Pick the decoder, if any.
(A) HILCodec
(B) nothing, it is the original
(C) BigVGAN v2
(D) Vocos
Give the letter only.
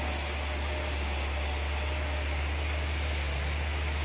B